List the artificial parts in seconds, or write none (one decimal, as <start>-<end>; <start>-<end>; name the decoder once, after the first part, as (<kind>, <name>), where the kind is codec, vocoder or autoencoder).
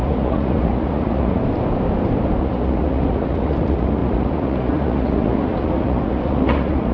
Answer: 0.0-1.4 (vocoder, Vocos); 2.4-6.9